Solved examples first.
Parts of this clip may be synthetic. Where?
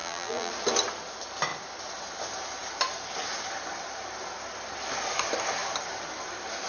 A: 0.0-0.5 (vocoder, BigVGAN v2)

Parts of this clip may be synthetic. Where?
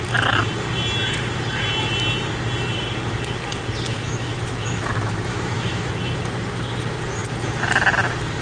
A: 3.9-5.9 (autoencoder, DAC-VAE)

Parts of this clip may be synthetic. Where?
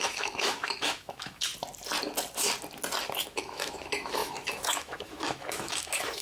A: 0.0-1.5 (autoencoder, DAC-VAE); 3.3-6.2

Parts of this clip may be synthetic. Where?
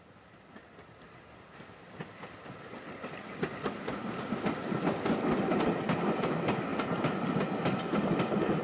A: 6.7-7.4 (vocoder, BigVGAN v2)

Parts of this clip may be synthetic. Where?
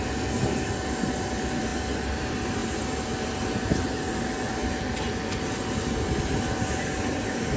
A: none